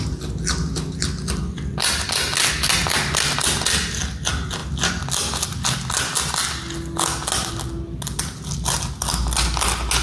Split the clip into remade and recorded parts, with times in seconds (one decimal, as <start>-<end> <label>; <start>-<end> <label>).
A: 0.0-10.0 recorded